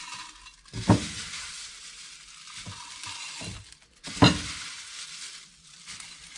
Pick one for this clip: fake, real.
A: real